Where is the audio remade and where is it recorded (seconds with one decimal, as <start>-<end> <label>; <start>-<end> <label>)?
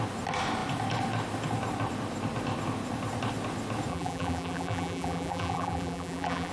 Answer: 0.0-3.9 recorded; 3.9-6.5 remade